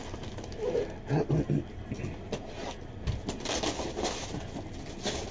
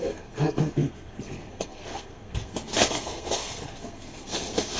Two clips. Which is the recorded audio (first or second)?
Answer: first